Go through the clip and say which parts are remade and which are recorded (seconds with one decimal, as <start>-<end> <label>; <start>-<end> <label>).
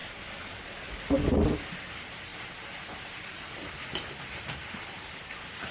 0.0-0.9 remade; 0.9-5.7 recorded